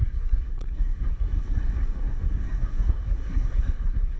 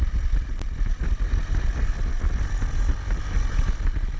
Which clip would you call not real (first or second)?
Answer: first